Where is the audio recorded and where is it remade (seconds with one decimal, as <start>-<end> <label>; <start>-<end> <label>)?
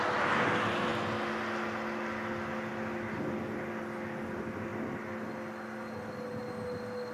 0.0-7.1 recorded